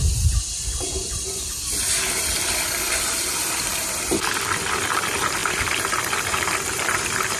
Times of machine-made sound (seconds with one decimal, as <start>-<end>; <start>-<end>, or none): 0.0-7.4